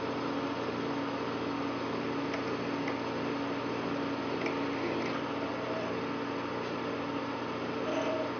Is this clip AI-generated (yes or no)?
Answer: no